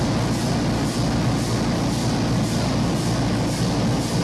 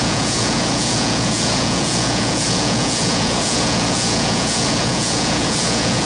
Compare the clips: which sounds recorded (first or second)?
first